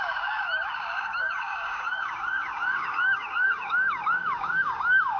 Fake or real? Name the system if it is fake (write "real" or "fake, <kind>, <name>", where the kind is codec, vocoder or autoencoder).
fake, codec, DAC